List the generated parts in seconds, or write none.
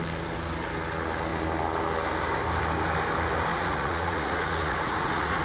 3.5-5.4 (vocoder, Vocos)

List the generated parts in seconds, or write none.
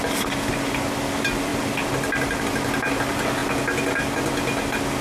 none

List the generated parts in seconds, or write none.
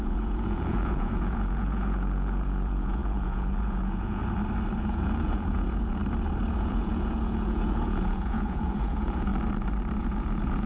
0.0-4.2 (vocoder, Vocos); 4.8-6.0; 6.6-9.3; 10.0-10.7